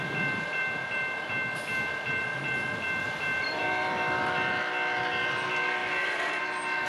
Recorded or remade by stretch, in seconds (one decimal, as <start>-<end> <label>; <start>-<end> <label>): 0.0-3.6 recorded; 3.6-4.3 remade; 4.3-6.9 recorded